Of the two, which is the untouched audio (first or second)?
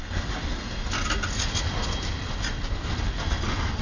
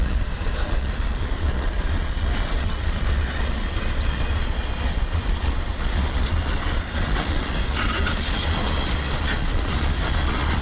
first